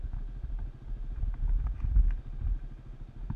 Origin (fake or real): real